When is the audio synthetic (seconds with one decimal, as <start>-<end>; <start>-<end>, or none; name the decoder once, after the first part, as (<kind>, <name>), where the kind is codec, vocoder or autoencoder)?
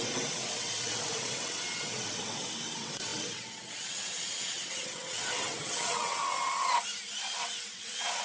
0.0-6.2 (vocoder, WaveNeXt); 7.7-8.2